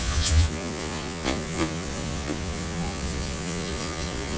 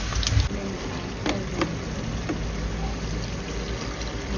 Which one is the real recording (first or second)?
second